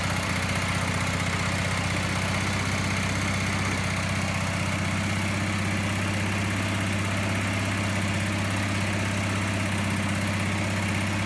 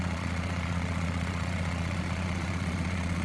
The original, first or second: first